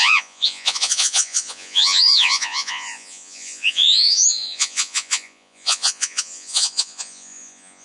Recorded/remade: remade